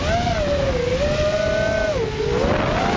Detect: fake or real real